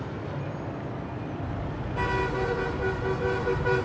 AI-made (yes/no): no